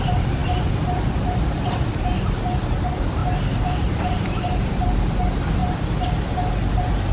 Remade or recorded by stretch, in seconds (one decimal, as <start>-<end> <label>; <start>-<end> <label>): 0.0-3.2 recorded; 3.2-4.7 remade; 4.7-5.6 recorded; 5.6-6.3 remade; 6.3-7.1 recorded